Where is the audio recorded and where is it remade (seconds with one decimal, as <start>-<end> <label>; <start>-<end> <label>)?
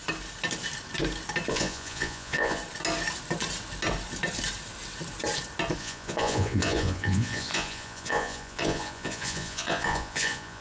0.0-1.5 recorded; 1.5-2.6 remade; 2.6-5.8 recorded; 5.8-10.6 remade